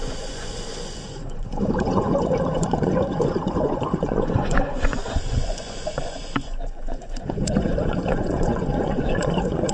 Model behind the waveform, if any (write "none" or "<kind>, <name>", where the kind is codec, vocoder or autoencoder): vocoder, Vocos